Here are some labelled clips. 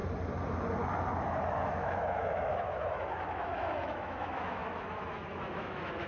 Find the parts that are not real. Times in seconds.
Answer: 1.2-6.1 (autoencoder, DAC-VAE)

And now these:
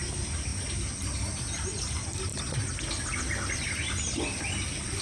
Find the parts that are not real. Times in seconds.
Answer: none